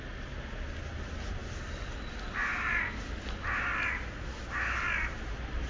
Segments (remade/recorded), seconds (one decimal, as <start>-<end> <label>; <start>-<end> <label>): 0.0-5.7 recorded